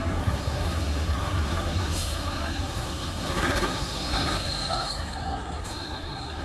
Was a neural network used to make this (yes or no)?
yes